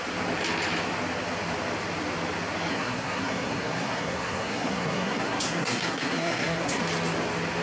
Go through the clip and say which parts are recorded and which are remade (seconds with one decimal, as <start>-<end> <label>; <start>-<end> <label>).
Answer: 0.0-2.7 recorded; 2.7-6.8 remade; 6.8-7.6 recorded